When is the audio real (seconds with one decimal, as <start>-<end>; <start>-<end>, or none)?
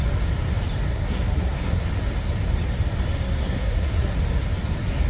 0.0-0.9; 1.8-3.4; 4.2-5.1